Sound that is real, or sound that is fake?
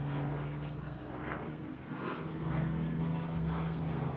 fake